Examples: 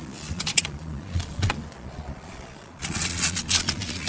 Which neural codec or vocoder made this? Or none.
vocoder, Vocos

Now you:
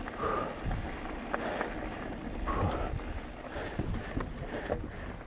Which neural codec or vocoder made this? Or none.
none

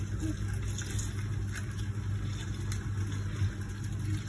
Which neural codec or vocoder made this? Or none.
none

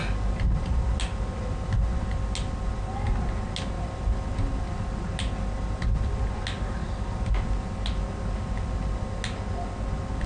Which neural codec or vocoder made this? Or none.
none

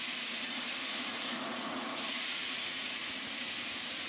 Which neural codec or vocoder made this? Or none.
vocoder, Vocos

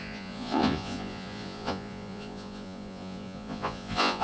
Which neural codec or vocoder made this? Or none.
vocoder, Vocos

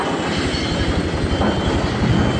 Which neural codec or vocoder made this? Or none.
none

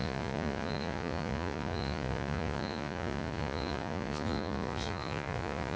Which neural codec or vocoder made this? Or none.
vocoder, Vocos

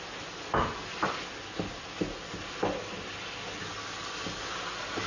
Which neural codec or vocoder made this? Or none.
none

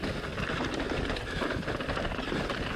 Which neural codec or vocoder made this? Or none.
none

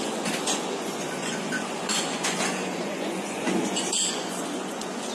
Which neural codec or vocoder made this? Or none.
vocoder, Vocos